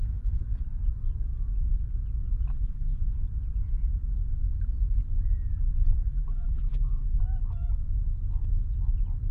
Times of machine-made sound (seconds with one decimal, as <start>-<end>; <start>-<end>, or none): 2.5-3.0; 6.1-7.2